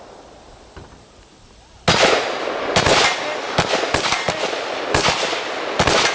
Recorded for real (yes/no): yes